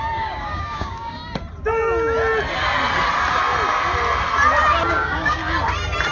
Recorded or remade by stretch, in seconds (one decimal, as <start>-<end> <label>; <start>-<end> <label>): 0.0-1.2 remade; 1.2-4.9 recorded; 4.9-5.4 remade; 5.4-6.1 recorded